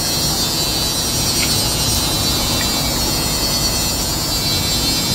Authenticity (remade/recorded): recorded